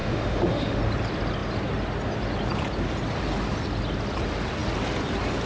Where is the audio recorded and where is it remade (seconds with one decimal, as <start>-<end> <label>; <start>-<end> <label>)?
0.0-0.8 remade; 0.8-5.5 recorded